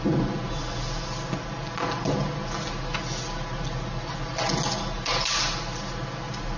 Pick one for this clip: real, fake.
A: real